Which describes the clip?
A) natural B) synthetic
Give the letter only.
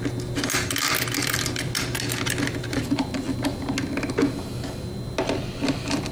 A